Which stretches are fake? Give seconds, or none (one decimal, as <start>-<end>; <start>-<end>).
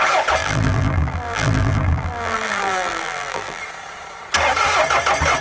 0.4-3.6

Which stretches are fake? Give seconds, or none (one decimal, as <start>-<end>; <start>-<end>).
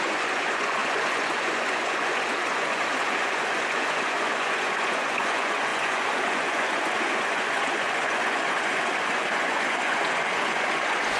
0.0-11.2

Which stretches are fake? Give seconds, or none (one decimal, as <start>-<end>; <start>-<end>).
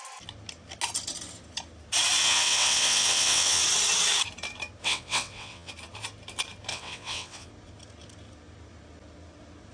2.2-3.6; 4.8-5.7; 6.7-7.5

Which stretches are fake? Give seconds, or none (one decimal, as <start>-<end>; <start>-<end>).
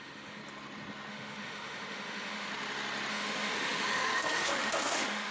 0.0-0.4; 1.1-2.5; 3.1-5.3